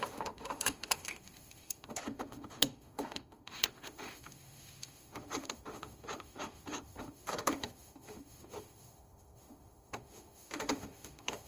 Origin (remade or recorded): remade